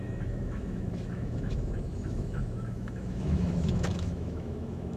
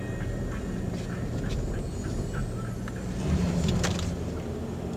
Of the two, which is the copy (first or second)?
first